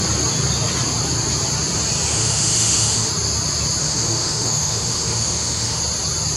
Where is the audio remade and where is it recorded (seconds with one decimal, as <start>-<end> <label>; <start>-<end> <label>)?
0.0-2.1 recorded; 2.1-3.1 remade; 3.1-3.8 recorded; 3.8-5.8 remade; 5.8-6.4 recorded